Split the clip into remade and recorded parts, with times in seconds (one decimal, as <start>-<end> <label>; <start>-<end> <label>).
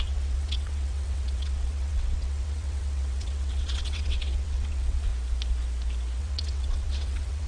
0.0-5.1 remade; 5.1-6.2 recorded; 6.2-7.5 remade